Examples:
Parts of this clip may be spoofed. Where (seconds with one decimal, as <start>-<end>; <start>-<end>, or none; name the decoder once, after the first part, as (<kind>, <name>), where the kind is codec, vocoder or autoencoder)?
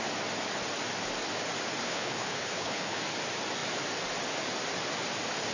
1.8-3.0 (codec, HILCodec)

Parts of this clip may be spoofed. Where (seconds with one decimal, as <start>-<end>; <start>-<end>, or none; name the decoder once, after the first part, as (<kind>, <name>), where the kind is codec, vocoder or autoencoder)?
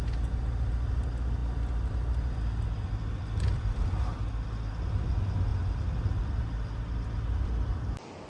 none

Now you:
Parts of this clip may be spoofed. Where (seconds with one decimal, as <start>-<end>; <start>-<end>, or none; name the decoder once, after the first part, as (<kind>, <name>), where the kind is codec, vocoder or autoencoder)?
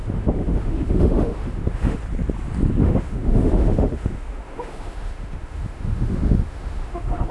0.0-2.0 (autoencoder, DAC-VAE); 2.8-7.3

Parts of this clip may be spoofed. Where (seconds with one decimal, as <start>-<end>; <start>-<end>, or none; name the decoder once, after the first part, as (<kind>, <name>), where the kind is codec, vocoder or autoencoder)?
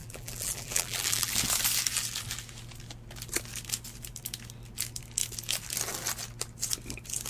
0.0-1.3 (vocoder, BigVGAN v2)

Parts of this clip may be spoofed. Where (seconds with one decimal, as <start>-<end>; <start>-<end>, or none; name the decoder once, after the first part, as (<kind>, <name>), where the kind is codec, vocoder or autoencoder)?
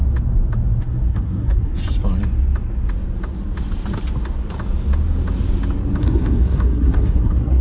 0.8-1.8 (codec, SNAC); 6.0-7.6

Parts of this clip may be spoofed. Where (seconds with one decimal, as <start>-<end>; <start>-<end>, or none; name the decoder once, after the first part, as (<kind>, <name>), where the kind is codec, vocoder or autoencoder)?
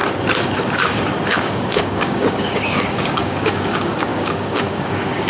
1.4-5.3 (codec, DAC)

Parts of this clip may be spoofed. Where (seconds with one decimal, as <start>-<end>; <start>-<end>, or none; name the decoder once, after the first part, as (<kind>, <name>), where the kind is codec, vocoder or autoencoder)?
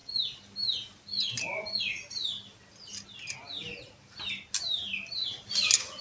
none